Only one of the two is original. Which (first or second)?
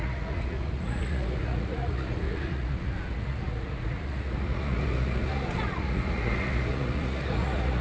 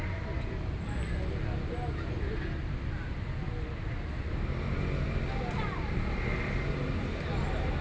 second